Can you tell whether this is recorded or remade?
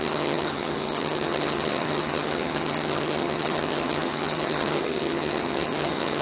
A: remade